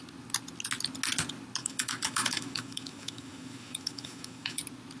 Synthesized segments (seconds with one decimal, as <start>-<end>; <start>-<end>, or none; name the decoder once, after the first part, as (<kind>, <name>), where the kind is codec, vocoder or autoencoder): 1.6-4.6 (autoencoder, DAC-VAE)